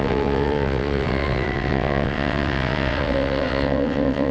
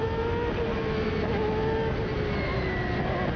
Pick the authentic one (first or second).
second